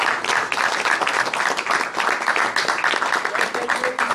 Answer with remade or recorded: recorded